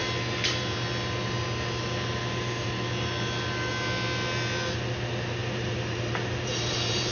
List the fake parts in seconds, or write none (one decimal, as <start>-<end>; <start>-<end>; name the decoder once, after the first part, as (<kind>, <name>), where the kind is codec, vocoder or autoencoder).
5.4-7.1 (vocoder, BigVGAN v2)